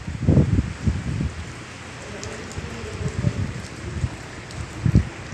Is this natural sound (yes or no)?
yes